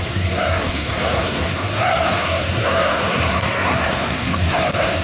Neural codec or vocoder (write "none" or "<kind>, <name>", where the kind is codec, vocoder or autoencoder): codec, SNAC